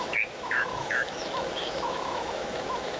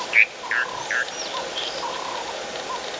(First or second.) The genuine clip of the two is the second